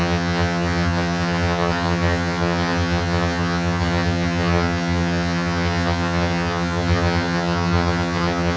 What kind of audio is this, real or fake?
fake